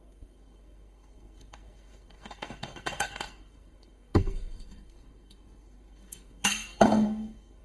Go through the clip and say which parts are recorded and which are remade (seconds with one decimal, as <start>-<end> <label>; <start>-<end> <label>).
0.0-7.6 remade